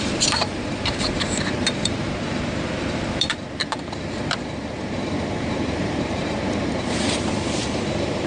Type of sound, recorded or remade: remade